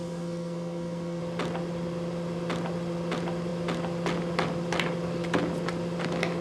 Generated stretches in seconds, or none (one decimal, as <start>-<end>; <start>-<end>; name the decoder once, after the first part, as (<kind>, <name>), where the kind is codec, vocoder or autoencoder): 0.0-1.2 (codec, SNAC)